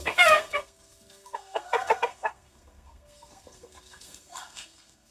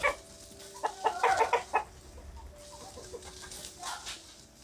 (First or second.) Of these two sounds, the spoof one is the first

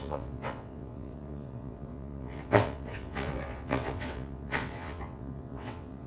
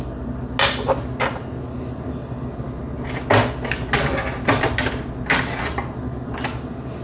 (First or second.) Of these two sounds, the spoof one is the first